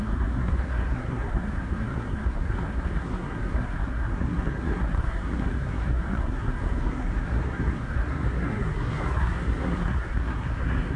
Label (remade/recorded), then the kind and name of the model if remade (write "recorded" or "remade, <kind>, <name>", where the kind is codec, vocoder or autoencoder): remade, codec, SNAC